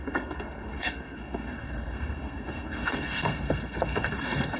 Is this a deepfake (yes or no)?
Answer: yes